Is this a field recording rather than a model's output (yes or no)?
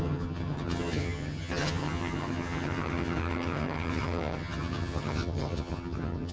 no